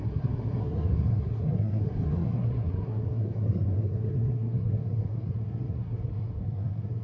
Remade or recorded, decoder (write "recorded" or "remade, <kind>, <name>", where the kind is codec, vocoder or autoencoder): remade, codec, SNAC